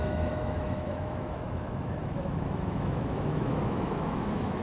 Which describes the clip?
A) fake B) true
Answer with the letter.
A